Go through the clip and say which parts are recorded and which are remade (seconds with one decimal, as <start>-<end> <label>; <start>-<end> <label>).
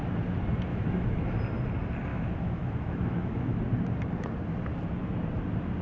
0.0-0.7 recorded; 0.7-1.2 remade; 1.2-2.1 recorded; 2.1-3.6 remade; 3.6-5.8 recorded